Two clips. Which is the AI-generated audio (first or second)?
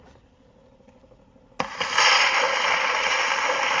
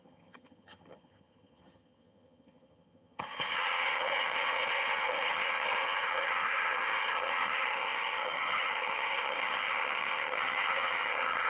second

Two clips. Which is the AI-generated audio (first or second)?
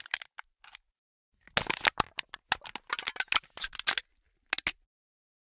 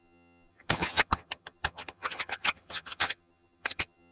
second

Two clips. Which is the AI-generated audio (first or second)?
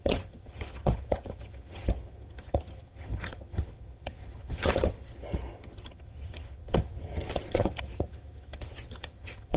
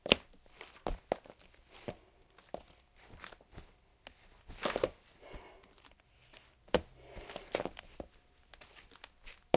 first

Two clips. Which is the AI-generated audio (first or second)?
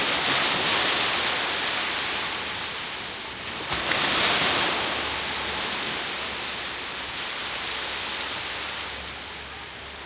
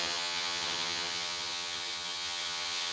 second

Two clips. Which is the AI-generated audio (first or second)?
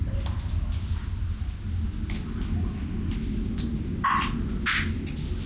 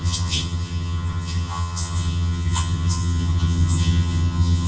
second